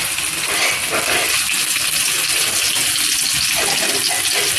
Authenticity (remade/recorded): recorded